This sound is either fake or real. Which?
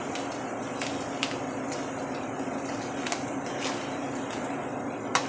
real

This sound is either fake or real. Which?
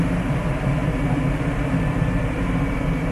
fake